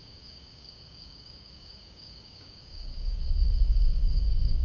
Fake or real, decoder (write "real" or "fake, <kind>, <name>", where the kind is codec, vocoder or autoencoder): fake, codec, DAC